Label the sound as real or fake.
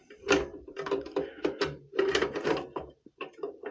fake